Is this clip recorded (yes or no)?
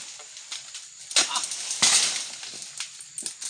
yes